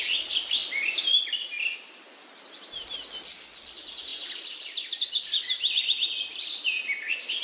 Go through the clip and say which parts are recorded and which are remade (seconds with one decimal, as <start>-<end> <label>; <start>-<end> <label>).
0.0-7.4 recorded